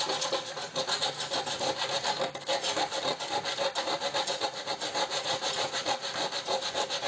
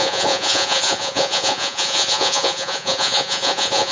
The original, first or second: first